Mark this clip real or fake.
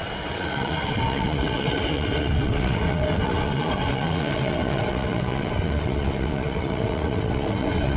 fake